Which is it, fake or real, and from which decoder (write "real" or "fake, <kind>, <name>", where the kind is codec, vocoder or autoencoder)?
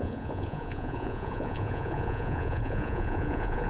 fake, vocoder, Vocos